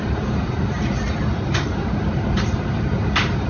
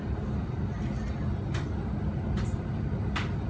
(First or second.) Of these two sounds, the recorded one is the second